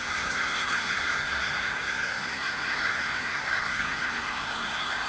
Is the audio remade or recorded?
remade